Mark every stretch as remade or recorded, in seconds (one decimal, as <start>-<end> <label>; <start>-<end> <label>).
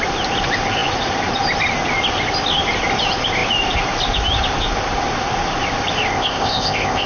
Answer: 0.0-6.1 recorded; 6.1-7.1 remade